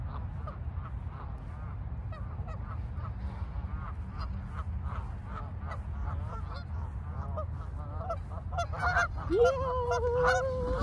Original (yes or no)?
yes